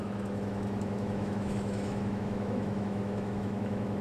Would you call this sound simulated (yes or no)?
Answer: yes